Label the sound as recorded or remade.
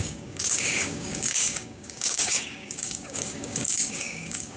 remade